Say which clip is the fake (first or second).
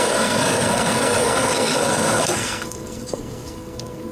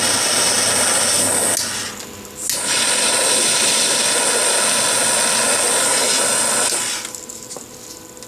first